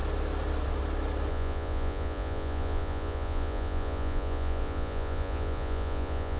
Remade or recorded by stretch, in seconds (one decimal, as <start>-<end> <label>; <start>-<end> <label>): 0.0-1.3 recorded; 1.3-6.4 remade